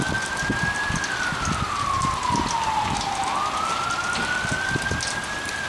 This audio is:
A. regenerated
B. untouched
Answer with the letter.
B